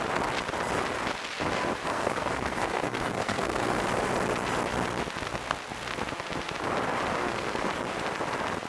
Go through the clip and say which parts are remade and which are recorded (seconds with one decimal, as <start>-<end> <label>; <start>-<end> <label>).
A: 0.0-1.9 recorded; 1.9-3.8 remade; 3.8-7.2 recorded; 7.2-7.7 remade; 7.7-8.7 recorded